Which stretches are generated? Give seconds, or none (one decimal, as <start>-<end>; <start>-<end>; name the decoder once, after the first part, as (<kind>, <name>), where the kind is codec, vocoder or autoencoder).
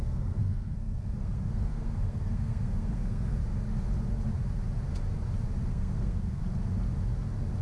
0.0-3.4 (codec, SNAC); 5.7-6.4